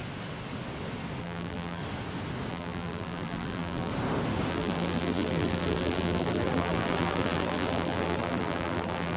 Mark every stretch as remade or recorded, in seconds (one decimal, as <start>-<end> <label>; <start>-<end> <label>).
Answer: 0.0-1.2 recorded; 1.2-1.8 remade; 1.8-2.5 recorded; 2.5-3.9 remade; 3.9-4.5 recorded; 4.5-9.2 remade